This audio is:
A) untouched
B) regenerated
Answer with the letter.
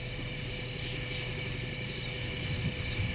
A